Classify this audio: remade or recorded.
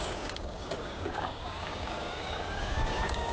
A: remade